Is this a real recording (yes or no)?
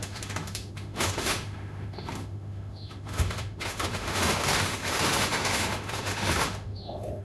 no